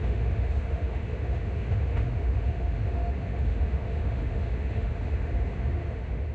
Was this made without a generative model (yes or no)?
no